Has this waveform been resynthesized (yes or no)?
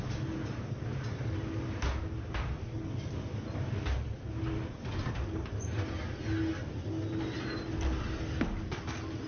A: no